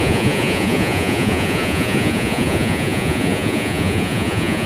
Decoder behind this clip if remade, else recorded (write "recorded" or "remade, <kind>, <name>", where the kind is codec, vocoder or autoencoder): remade, vocoder, Vocos